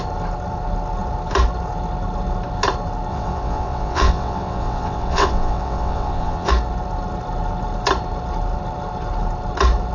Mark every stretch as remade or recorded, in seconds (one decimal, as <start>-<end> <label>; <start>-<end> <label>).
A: 0.0-3.1 recorded; 3.1-6.5 remade; 6.5-9.9 recorded